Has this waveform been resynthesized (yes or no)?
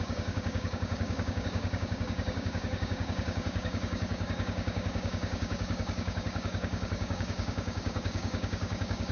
yes